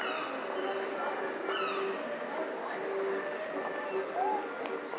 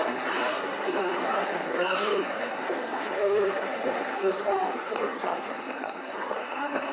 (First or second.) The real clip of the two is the first